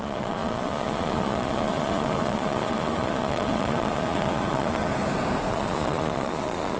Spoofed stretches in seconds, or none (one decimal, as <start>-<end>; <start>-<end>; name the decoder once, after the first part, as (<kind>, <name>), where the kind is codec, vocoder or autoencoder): 0.0-4.9 (vocoder, Vocos); 5.5-6.8